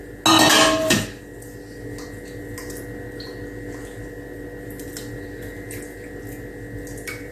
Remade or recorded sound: recorded